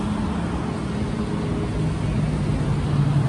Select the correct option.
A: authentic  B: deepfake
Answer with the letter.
A